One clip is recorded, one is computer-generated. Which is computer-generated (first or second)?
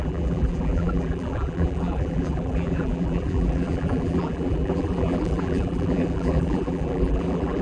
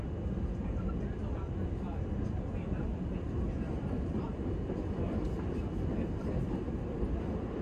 first